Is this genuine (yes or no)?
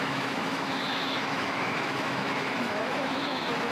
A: no